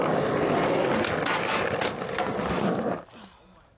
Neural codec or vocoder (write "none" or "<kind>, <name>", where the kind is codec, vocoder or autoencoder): none